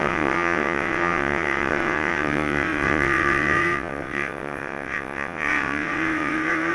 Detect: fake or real fake